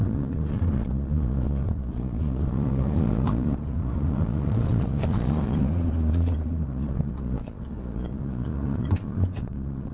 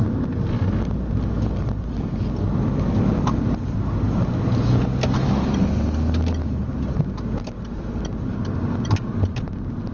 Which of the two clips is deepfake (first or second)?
first